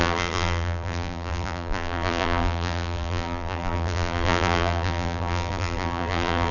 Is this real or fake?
fake